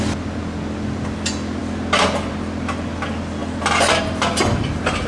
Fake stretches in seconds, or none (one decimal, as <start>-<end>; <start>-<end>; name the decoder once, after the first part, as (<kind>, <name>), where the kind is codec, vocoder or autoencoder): none